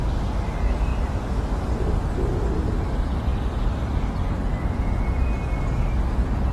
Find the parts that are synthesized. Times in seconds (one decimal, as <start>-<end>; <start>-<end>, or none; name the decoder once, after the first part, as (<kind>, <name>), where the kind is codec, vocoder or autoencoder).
none